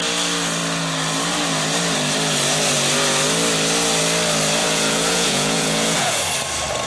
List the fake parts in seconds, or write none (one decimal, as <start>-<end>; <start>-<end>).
4.6-6.2